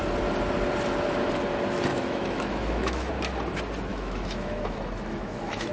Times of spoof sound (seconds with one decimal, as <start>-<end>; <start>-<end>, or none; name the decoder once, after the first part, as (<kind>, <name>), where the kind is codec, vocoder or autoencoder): 1.9-3.1 (autoencoder, DAC-VAE); 3.9-5.7